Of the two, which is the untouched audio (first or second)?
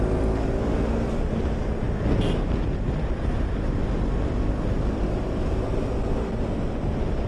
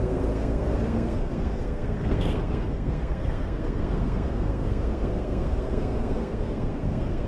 first